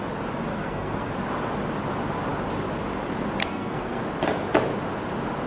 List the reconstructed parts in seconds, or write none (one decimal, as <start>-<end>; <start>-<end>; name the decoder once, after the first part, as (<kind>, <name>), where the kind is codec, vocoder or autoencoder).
0.5-1.1 (codec, SNAC); 3.4-4.0